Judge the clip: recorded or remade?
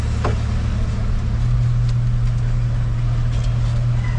recorded